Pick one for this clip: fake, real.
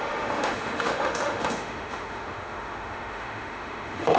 fake